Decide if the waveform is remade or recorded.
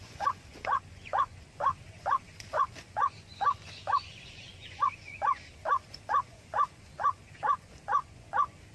remade